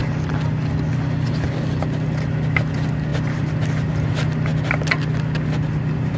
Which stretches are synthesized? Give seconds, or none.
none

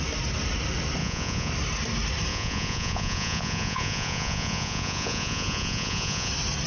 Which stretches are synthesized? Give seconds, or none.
1.0-1.5 (vocoder, Vocos); 2.3-6.3